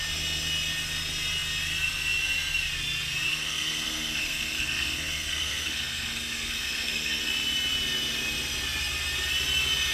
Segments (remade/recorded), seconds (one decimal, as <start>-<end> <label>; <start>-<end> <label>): 0.0-3.3 recorded; 3.3-7.2 remade; 7.2-9.9 recorded